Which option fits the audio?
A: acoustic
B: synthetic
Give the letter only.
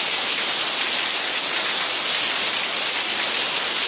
A